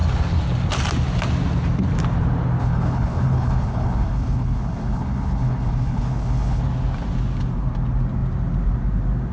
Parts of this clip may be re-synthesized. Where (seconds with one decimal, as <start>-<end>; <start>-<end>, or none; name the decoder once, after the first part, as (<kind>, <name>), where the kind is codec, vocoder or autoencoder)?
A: 2.6-6.6 (codec, HILCodec)